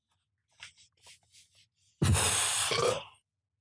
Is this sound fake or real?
real